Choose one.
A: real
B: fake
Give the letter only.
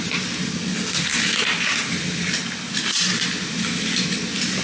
A